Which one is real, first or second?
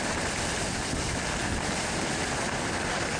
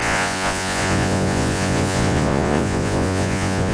first